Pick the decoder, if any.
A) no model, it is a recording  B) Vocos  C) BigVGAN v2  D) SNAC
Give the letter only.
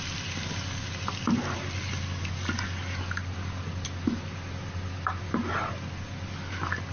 A